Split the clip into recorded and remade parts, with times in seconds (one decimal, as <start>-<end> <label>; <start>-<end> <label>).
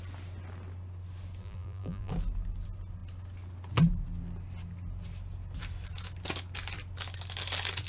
0.0-1.4 recorded; 1.4-2.1 remade; 2.1-7.9 recorded